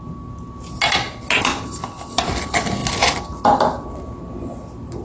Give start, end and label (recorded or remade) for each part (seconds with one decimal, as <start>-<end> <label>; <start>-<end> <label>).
0.0-5.0 recorded